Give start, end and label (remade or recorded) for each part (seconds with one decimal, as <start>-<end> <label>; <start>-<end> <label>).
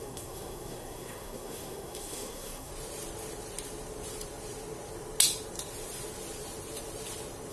0.0-2.7 remade; 2.7-7.5 recorded